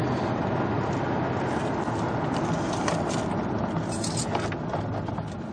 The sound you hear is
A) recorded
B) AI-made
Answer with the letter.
A